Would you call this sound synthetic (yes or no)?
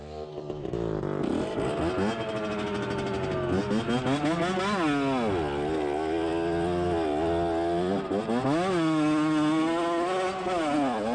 no